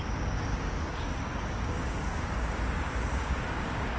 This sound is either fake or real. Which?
fake